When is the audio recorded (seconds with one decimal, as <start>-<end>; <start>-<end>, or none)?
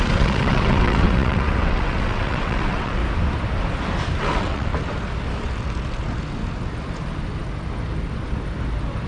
3.0-4.2; 4.7-9.1